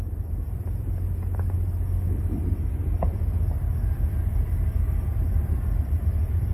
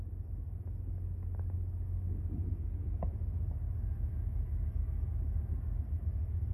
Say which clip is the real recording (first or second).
second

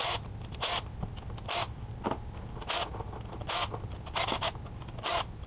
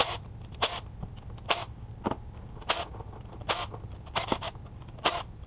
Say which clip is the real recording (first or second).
first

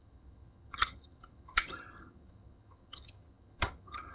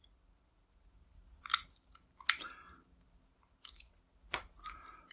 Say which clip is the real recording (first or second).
second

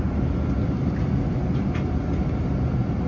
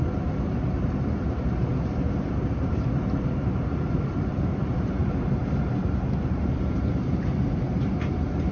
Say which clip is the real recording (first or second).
first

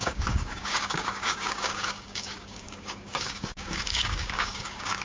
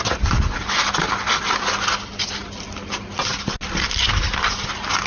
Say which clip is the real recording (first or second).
second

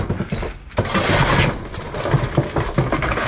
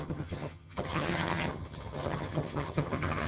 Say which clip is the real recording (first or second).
first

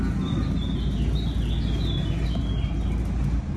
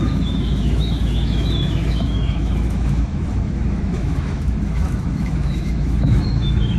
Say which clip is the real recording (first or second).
first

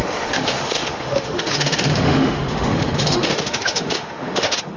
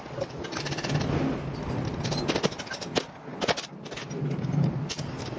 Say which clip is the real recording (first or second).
second